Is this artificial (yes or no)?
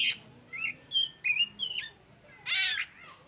no